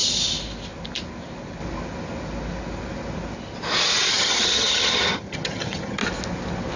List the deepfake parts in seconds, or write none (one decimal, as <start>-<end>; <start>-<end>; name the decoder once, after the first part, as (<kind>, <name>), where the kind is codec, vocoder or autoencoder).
4.1-6.0 (vocoder, HiFi-GAN)